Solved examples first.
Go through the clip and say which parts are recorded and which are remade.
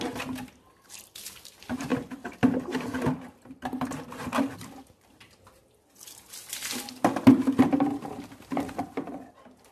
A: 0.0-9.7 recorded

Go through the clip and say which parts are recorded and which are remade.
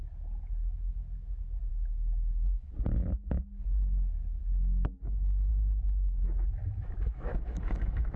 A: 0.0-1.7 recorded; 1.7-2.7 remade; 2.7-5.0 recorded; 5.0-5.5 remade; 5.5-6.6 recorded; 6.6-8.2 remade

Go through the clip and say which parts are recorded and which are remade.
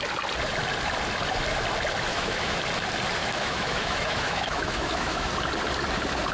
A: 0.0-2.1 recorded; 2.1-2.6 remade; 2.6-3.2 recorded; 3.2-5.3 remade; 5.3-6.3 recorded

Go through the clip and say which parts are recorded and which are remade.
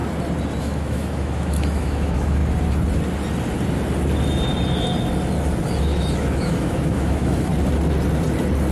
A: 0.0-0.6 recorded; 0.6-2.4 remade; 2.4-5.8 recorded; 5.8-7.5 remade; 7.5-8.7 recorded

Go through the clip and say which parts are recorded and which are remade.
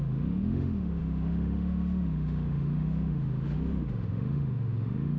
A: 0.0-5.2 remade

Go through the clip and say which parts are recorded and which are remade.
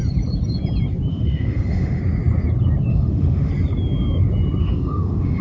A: 0.0-1.1 recorded; 1.1-2.0 remade; 2.0-2.9 recorded; 2.9-3.5 remade; 3.5-4.6 recorded; 4.6-5.4 remade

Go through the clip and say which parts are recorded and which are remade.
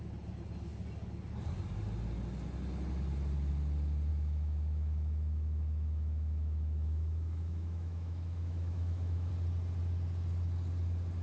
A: 0.0-4.1 recorded; 4.1-9.3 remade; 9.3-11.2 recorded